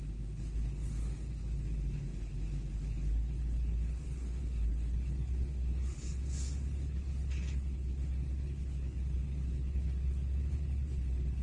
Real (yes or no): no